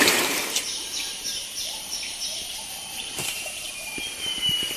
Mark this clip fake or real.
fake